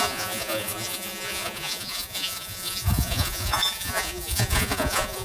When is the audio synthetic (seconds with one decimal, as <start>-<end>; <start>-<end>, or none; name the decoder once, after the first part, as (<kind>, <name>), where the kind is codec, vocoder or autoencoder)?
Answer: 0.0-5.2 (vocoder, Vocos)